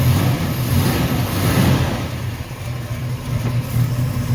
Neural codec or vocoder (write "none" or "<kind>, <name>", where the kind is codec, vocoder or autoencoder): none